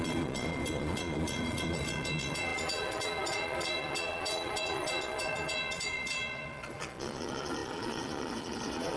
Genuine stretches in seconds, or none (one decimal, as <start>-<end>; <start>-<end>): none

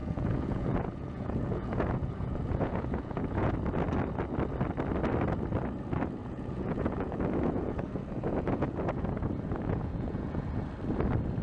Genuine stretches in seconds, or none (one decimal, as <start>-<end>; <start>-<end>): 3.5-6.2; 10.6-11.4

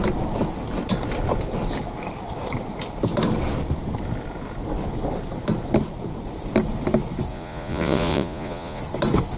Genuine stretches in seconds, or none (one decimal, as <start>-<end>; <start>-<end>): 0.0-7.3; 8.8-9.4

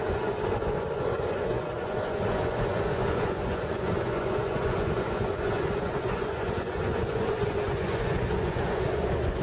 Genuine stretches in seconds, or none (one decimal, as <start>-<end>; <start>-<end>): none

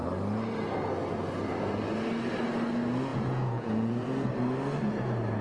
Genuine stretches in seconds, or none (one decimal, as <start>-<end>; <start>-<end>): 0.0-3.1; 4.3-5.4